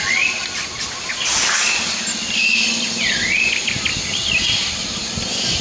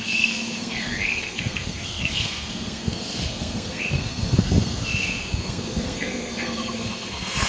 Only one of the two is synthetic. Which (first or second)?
second